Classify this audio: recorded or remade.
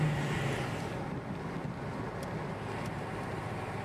recorded